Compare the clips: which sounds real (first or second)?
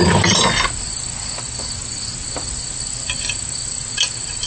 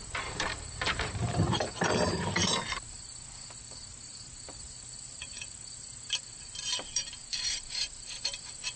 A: first